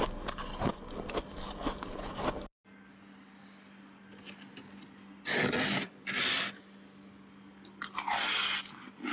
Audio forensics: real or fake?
real